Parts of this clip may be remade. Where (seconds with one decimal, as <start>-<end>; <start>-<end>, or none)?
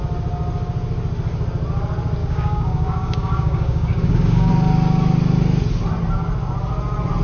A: 2.2-4.5